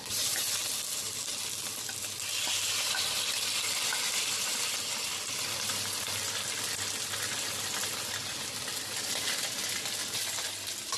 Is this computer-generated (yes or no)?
no